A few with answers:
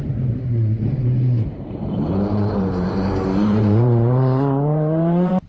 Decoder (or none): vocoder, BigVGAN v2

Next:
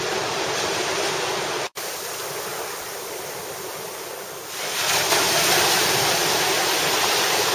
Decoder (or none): vocoder, BigVGAN v2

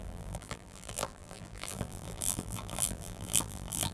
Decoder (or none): vocoder, BigVGAN v2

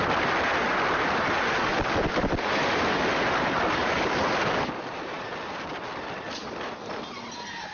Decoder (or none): none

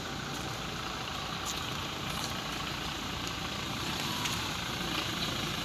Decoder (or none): vocoder, BigVGAN v2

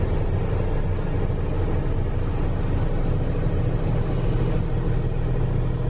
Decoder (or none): none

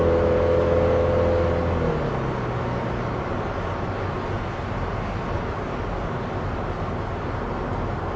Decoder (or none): none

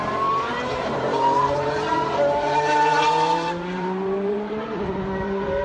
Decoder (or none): vocoder, BigVGAN v2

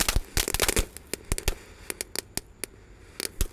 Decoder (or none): none